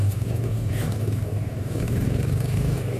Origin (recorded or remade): remade